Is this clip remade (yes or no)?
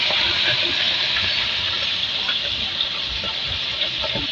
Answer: no